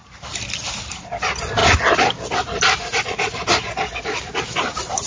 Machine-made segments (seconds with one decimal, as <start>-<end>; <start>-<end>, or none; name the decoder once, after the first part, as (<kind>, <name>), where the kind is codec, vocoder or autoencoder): none